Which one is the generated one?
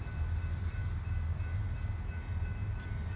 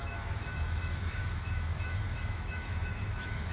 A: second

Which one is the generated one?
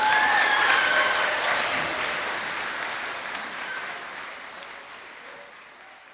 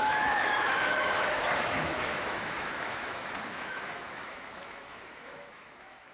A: second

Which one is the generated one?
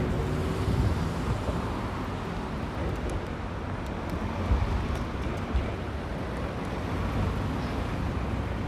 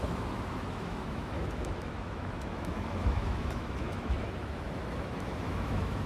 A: second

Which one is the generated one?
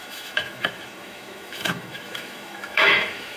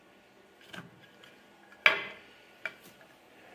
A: first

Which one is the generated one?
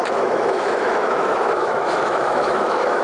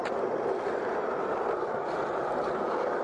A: first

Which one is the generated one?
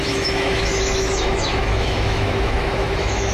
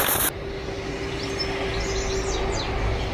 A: first